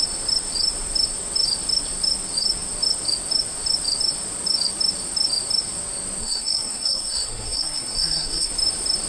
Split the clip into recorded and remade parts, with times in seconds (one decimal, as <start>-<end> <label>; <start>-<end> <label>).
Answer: 0.0-6.2 recorded; 6.2-8.5 remade; 8.5-9.1 recorded